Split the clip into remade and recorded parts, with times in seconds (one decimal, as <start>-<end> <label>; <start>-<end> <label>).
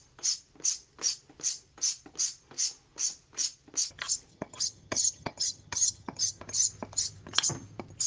0.0-4.3 recorded; 4.3-6.4 remade; 6.4-8.1 recorded